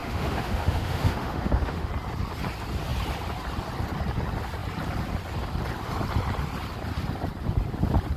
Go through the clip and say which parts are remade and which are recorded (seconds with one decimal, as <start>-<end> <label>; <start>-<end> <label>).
0.0-1.9 remade; 1.9-8.2 recorded